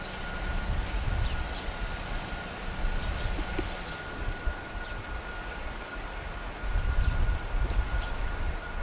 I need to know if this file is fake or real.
real